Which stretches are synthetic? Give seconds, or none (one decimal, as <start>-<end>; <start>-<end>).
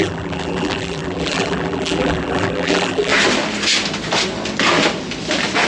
0.0-3.1